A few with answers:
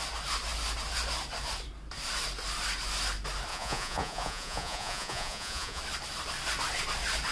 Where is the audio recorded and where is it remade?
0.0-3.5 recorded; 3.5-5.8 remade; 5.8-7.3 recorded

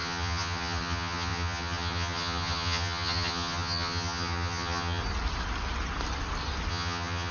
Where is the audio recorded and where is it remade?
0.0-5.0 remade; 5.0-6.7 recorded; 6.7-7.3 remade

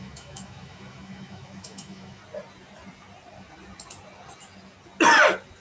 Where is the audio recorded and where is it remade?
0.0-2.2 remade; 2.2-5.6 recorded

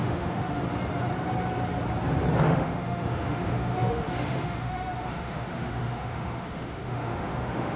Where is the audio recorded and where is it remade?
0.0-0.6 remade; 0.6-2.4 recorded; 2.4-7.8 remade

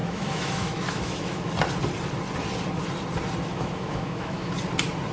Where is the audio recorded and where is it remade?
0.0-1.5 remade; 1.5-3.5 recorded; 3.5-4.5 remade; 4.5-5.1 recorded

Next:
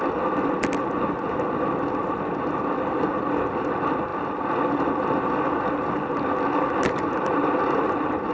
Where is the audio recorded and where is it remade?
0.0-8.3 recorded

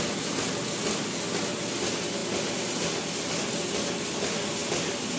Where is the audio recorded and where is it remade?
0.0-5.2 recorded

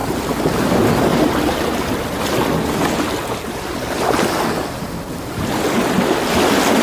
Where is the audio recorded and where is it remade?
0.0-1.1 recorded; 1.1-1.9 remade; 1.9-6.8 recorded